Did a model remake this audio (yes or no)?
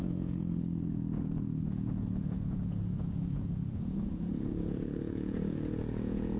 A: yes